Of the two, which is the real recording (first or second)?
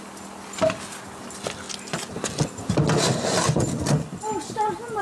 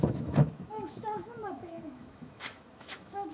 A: first